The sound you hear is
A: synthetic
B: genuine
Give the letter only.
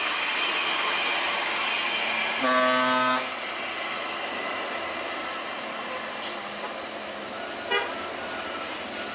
B